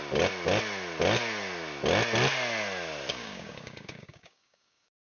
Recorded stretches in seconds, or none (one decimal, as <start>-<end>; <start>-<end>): 0.0-3.1